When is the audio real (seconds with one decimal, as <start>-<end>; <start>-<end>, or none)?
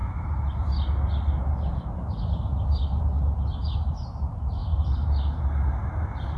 0.0-4.6; 5.4-6.4